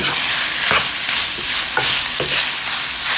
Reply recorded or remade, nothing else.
recorded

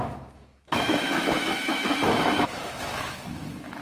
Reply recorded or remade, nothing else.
remade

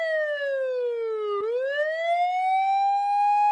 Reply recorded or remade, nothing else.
recorded